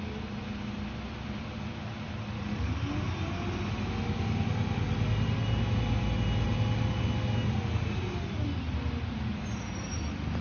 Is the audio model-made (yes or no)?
no